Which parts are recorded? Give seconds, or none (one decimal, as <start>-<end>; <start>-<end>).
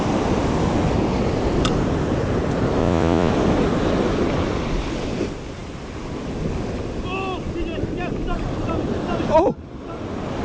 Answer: 0.0-2.8; 3.3-10.4